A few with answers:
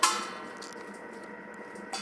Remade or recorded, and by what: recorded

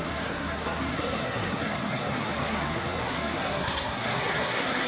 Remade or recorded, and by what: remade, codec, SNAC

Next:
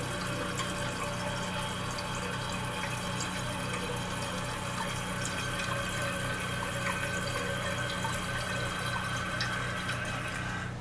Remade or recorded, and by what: recorded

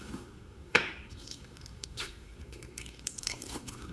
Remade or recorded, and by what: remade, codec, SNAC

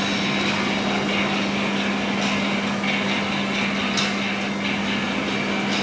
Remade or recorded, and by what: recorded